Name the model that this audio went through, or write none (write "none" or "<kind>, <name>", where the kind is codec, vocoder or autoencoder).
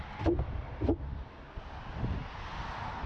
none